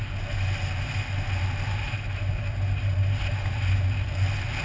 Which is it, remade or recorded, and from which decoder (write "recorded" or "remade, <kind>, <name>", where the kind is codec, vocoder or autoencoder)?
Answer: recorded